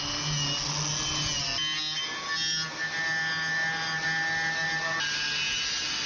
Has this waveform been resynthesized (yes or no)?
no